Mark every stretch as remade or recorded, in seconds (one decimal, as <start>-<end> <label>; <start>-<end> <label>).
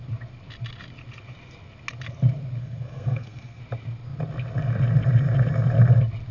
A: 0.0-2.6 recorded; 2.6-3.6 remade; 3.6-6.3 recorded